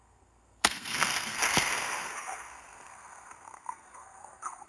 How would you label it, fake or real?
fake